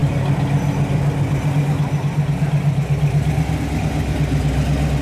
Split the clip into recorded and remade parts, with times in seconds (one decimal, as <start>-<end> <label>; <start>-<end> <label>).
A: 0.0-5.0 recorded